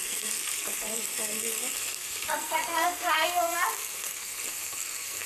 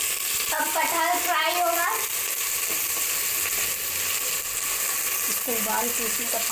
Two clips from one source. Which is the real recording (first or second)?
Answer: second